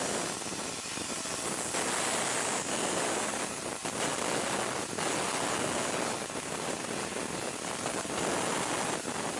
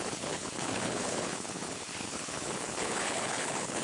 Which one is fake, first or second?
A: second